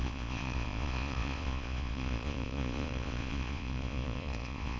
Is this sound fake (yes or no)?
yes